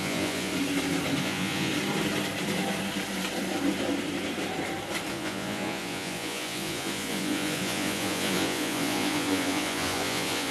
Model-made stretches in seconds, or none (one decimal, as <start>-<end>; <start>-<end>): 0.0-0.5; 1.2-1.7; 5.1-10.5